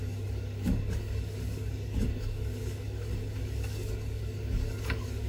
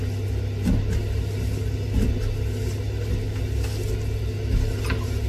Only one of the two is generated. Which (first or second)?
first